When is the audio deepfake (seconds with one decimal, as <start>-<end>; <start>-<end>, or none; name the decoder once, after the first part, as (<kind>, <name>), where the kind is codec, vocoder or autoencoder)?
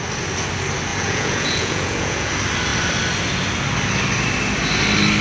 0.9-2.3 (vocoder, Vocos)